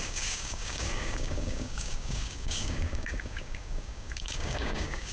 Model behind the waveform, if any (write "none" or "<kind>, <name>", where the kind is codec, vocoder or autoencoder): codec, DAC